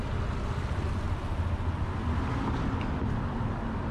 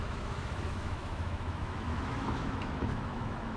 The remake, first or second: second